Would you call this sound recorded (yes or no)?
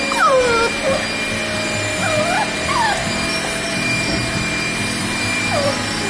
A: no